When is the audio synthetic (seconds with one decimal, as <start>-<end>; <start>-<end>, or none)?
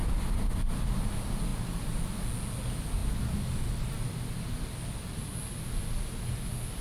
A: none